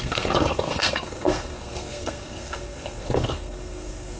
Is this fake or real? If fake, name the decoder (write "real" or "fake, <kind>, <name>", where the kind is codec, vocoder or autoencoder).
fake, codec, SNAC